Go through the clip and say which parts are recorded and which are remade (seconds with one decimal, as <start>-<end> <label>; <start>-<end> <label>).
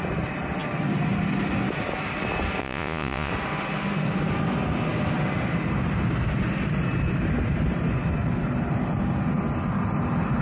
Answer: 0.0-2.6 recorded; 2.6-3.3 remade; 3.3-10.4 recorded